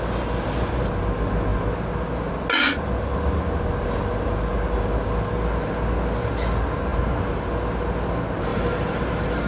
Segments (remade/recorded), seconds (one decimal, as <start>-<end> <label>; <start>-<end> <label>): 0.0-6.9 recorded; 6.9-7.5 remade; 7.5-8.5 recorded; 8.5-9.5 remade